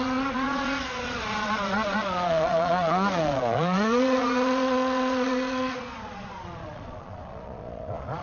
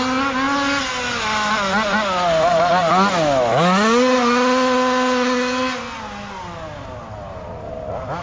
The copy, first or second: first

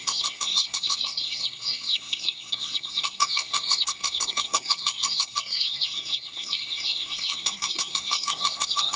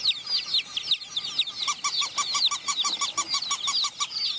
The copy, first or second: first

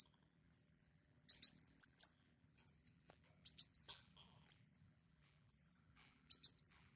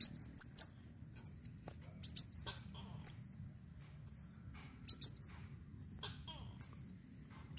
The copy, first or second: first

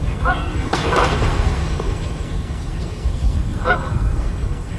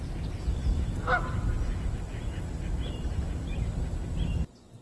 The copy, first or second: first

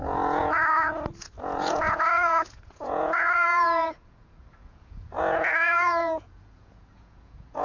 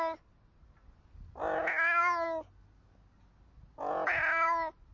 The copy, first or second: first